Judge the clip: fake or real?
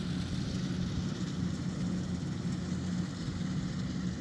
real